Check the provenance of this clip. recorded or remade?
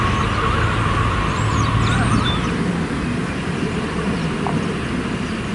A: recorded